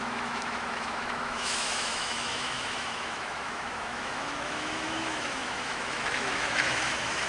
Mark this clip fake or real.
fake